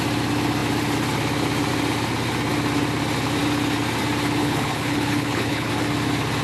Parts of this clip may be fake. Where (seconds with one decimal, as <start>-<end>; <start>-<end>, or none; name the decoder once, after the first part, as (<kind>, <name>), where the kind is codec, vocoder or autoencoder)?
4.4-5.7 (codec, HILCodec)